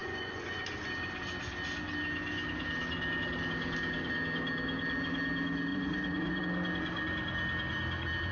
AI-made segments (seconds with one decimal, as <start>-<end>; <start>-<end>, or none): 0.0-0.7; 5.7-6.4